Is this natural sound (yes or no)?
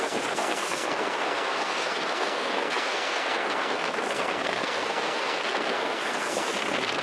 no